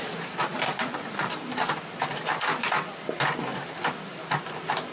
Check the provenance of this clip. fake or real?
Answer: real